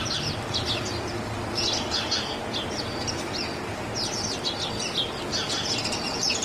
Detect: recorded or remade recorded